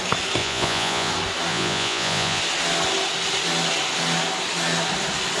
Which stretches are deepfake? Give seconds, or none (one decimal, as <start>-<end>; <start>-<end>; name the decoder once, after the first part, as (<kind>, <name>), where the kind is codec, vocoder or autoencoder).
0.4-1.1 (vocoder, Vocos); 1.5-2.4